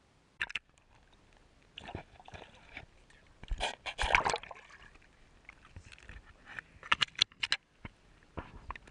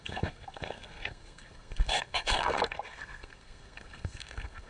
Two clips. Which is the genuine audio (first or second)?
first